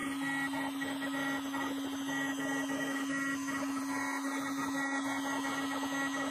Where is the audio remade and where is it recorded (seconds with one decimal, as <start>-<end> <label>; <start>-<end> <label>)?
0.0-6.3 recorded